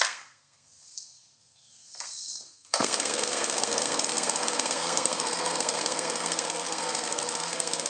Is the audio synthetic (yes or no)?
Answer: yes